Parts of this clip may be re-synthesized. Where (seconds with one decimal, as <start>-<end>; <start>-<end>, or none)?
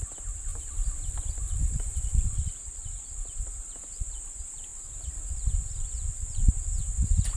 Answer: 0.5-3.8; 4.7-5.9